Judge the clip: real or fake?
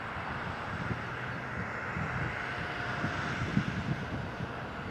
real